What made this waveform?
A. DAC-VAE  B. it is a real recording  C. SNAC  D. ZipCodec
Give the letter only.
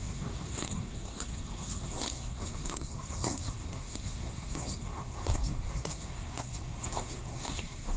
C